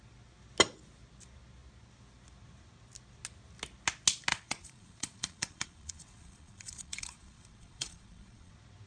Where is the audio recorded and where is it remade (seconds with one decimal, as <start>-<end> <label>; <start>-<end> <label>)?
0.0-4.3 recorded; 4.3-8.5 remade; 8.5-8.9 recorded